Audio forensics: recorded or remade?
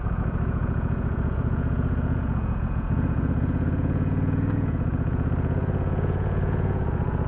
remade